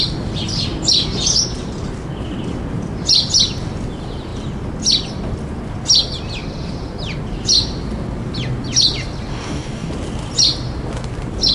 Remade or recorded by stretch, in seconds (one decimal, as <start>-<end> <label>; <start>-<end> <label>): 0.0-9.3 recorded; 9.3-9.9 remade; 9.9-11.5 recorded